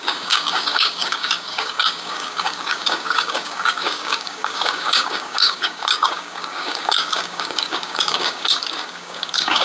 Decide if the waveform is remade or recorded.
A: remade